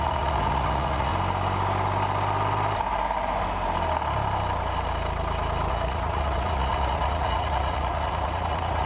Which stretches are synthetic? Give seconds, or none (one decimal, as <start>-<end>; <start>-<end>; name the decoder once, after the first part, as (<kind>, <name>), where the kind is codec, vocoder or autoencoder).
0.0-1.1 (vocoder, Vocos); 5.7-8.9